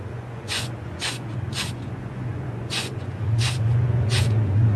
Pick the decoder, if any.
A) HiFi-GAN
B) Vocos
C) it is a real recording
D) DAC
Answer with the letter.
B